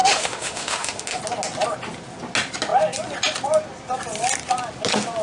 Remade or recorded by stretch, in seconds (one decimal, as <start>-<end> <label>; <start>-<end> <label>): 0.0-1.2 remade; 1.2-5.2 recorded